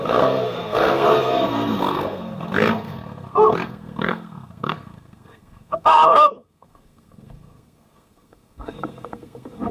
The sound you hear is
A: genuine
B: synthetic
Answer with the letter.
B